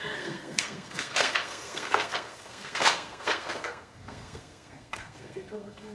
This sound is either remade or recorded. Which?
remade